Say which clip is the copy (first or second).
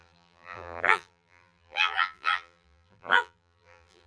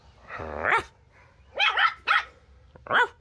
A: first